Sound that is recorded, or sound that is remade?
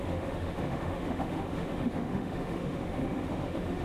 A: remade